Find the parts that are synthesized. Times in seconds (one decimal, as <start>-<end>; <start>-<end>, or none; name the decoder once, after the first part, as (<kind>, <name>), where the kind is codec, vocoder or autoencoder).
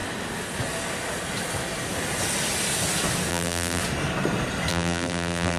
3.3-3.8 (vocoder, BigVGAN v2); 4.7-5.6